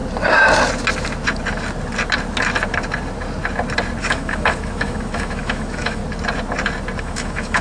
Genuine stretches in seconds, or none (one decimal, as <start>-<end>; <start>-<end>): 0.0-4.0; 6.0-7.0